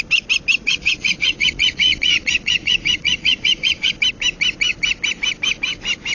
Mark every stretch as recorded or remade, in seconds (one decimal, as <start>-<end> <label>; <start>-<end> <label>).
0.0-0.6 recorded; 0.6-3.9 remade; 3.9-6.1 recorded